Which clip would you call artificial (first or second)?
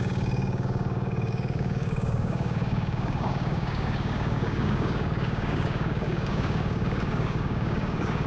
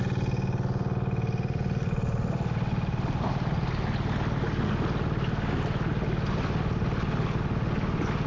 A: first